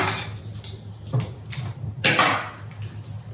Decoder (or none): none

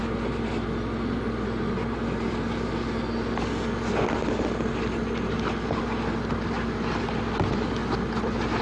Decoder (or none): none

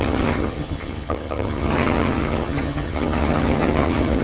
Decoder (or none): vocoder, HiFi-GAN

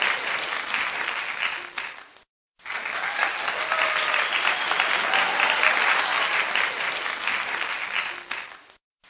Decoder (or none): none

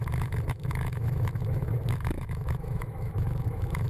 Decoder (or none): autoencoder, DAC-VAE